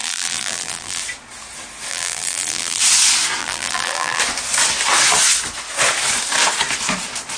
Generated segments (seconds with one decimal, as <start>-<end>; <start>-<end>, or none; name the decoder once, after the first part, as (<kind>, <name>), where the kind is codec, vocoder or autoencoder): 0.0-1.0 (vocoder, BigVGAN v2); 1.9-2.8; 3.4-4.2